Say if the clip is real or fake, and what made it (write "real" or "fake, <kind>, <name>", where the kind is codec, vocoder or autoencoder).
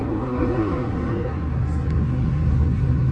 fake, codec, SNAC